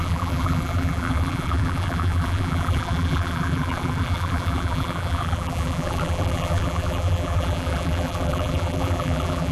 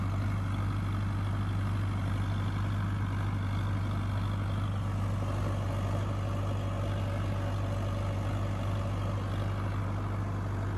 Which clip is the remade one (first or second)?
first